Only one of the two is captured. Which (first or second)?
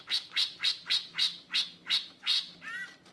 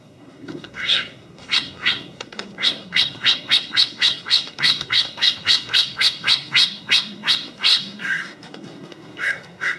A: first